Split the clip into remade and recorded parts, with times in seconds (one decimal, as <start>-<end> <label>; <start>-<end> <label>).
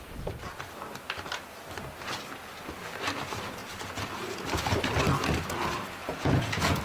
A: 0.0-6.0 recorded; 6.0-6.8 remade